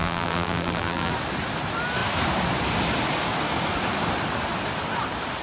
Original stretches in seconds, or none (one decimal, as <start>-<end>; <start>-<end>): 1.1-5.4